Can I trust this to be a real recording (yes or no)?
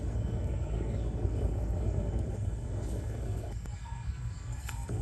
no